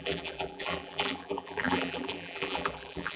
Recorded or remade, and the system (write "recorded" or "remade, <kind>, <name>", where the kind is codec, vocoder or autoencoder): remade, vocoder, BigVGAN v2